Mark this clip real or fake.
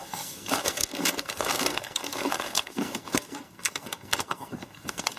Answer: fake